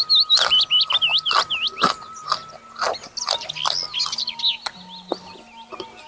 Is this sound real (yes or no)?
yes